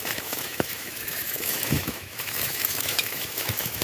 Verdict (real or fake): fake